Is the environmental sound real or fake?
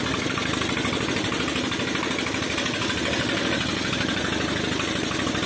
real